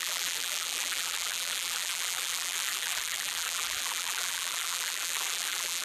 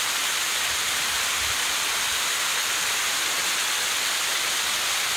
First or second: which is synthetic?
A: first